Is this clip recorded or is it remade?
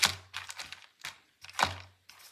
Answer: recorded